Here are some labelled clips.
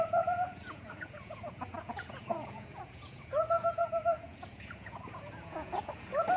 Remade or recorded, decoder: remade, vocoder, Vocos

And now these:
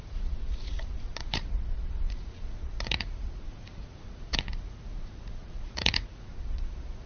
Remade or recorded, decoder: remade, vocoder, Vocos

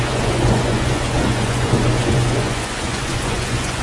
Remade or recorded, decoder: remade, vocoder, Vocos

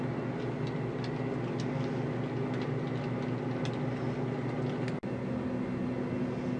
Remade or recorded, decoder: recorded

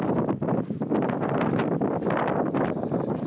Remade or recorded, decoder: recorded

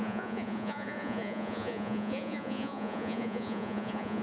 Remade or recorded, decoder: remade, vocoder, Vocos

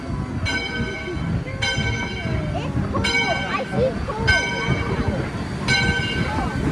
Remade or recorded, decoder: recorded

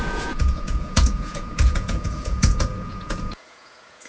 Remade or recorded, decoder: remade, vocoder, Vocos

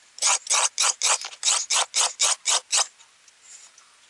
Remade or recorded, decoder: recorded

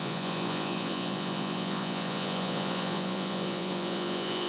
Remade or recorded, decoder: remade, vocoder, Vocos